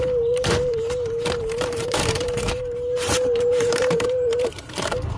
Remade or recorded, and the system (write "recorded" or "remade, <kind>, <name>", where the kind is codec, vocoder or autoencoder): remade, vocoder, BigVGAN v2